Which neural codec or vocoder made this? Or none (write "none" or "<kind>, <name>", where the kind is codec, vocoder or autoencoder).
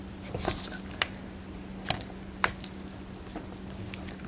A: none